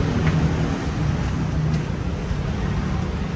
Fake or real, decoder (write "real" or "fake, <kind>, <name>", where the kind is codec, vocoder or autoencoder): real